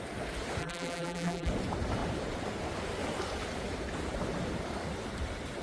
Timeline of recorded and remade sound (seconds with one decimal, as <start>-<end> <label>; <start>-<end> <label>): 0.0-0.6 recorded; 0.6-1.5 remade; 1.5-5.6 recorded

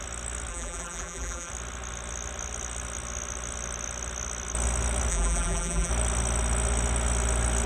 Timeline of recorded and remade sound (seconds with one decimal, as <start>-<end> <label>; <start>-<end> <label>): 0.0-0.5 recorded; 0.5-1.5 remade; 1.5-5.1 recorded; 5.1-5.9 remade; 5.9-7.7 recorded

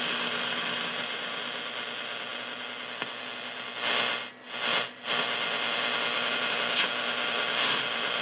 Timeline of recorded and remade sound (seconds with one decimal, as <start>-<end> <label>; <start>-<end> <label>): 0.0-8.2 recorded